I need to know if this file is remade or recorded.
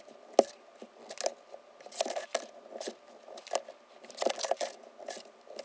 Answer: recorded